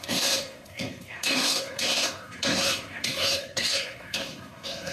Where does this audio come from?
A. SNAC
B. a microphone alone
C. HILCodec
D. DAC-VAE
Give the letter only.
A